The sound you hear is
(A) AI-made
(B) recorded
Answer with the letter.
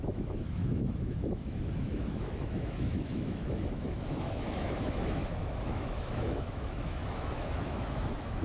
A